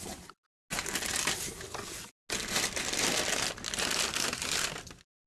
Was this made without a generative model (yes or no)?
yes